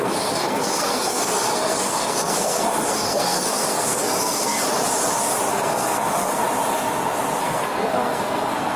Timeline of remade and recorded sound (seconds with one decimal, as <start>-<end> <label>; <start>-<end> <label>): 0.0-4.6 remade; 4.6-5.5 recorded; 5.5-6.4 remade; 6.4-7.4 recorded; 7.4-8.8 remade